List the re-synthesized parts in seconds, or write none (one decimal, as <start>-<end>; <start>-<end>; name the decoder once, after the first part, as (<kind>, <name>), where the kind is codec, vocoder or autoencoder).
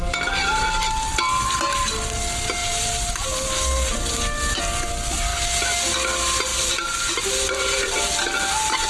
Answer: 2.6-4.6 (vocoder, BigVGAN v2); 6.5-8.1